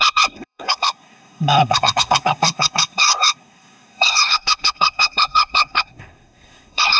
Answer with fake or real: fake